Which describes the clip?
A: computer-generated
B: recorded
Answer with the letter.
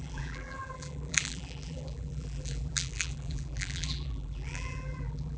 A